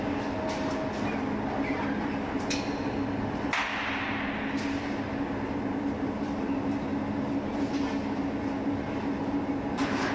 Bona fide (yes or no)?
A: yes